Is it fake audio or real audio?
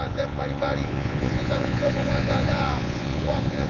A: fake